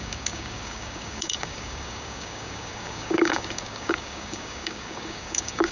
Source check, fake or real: fake